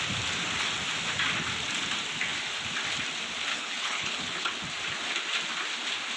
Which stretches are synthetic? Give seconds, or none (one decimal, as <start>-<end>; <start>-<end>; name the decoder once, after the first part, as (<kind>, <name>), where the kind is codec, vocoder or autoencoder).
3.5-4.5 (codec, HILCodec)